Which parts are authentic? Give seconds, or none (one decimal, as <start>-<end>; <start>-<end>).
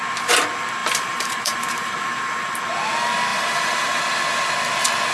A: 0.0-0.8; 2.7-3.3; 4.0-5.1